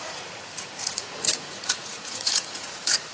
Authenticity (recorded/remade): remade